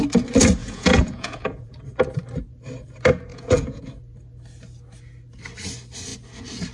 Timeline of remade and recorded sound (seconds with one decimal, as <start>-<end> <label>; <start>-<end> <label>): 0.0-0.6 recorded; 0.6-1.7 remade; 1.7-3.3 recorded; 3.3-3.8 remade; 3.8-6.7 recorded

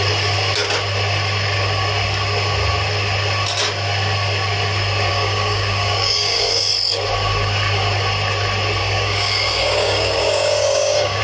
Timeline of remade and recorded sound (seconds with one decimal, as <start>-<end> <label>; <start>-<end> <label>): 0.0-5.1 recorded; 5.1-6.7 remade; 6.7-8.8 recorded; 8.8-11.2 remade

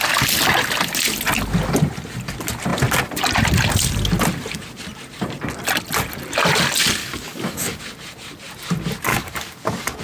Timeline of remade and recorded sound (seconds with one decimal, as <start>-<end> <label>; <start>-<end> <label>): 0.0-7.0 recorded; 7.0-7.8 remade; 7.8-9.1 recorded; 9.1-10.0 remade

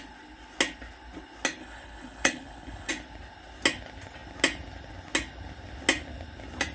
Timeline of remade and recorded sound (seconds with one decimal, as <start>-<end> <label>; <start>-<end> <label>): 0.0-1.6 recorded; 1.6-2.9 remade; 2.9-6.7 recorded

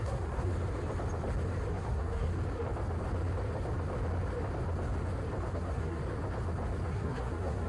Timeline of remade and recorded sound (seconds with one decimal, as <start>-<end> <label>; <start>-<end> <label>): 0.0-0.5 remade; 0.5-1.7 recorded; 1.7-2.3 remade; 2.3-5.5 recorded; 5.5-6.0 remade; 6.0-6.9 recorded; 6.9-7.7 remade

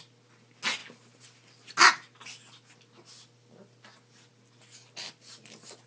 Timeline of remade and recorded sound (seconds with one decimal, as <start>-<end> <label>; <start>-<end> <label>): 0.0-5.9 recorded

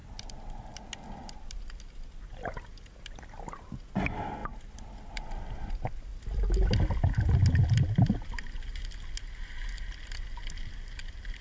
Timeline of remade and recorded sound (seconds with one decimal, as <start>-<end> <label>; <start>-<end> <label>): 0.0-3.0 remade; 3.0-11.4 recorded

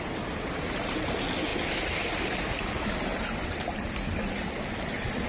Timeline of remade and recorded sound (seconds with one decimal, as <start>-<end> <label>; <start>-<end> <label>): 0.0-5.3 recorded